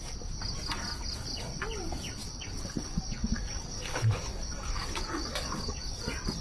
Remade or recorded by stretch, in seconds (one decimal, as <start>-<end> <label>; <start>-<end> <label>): 0.0-2.2 recorded; 2.2-6.0 remade; 6.0-6.4 recorded